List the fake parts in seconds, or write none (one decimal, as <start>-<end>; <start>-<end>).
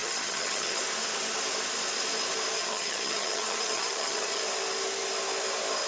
0.0-0.8; 2.6-4.4